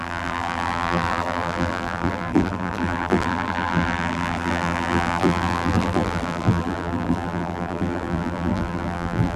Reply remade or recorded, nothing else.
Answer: remade